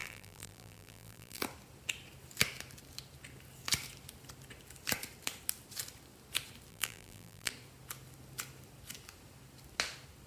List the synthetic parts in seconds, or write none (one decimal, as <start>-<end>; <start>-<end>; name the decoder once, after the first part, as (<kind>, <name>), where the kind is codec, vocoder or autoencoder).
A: 0.0-1.4 (vocoder, BigVGAN v2); 6.7-7.5